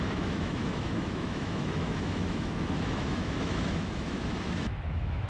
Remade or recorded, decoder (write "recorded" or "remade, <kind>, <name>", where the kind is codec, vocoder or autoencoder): remade, autoencoder, DAC-VAE